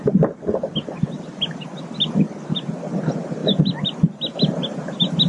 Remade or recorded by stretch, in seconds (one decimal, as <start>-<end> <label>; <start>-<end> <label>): 0.0-5.3 recorded